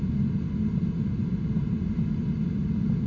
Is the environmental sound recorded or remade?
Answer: recorded